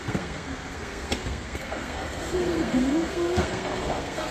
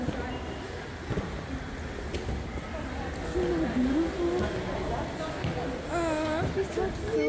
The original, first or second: second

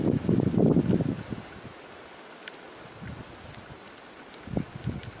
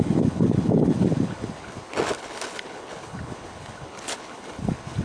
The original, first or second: first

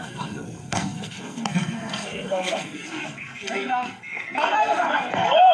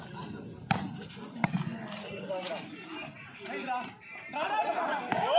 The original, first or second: second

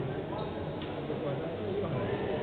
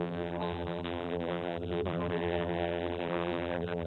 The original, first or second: first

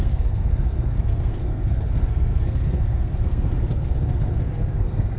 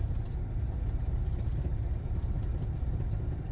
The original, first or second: second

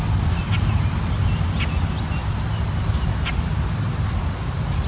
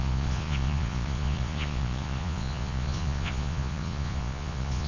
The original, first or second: first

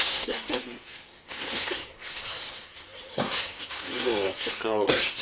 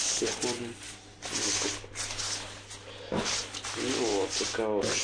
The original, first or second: second